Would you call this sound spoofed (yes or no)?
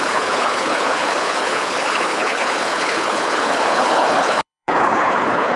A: yes